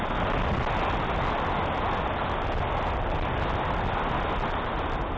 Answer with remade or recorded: recorded